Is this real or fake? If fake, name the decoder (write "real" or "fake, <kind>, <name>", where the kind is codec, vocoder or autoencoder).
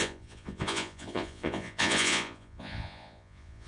fake, vocoder, Vocos